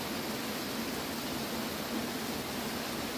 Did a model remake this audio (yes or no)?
no